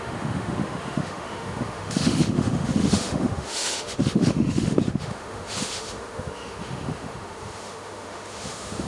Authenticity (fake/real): fake